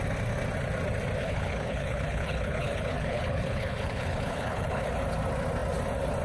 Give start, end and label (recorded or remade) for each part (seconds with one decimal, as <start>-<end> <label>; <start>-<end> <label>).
0.0-1.2 recorded; 1.2-4.9 remade; 4.9-6.2 recorded